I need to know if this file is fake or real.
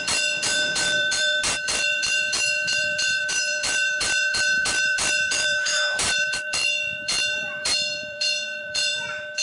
fake